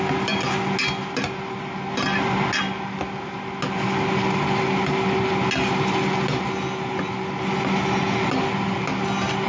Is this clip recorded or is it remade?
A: recorded